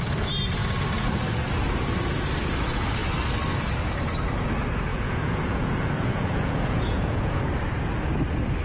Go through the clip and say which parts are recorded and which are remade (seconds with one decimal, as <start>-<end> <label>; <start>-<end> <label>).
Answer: 0.0-4.9 recorded; 4.9-7.4 remade; 7.4-8.6 recorded